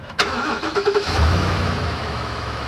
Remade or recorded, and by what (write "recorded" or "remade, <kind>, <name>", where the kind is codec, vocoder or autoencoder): remade, autoencoder, DAC-VAE